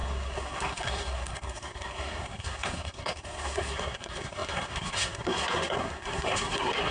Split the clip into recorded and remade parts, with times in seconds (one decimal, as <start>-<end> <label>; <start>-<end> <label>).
0.0-6.9 remade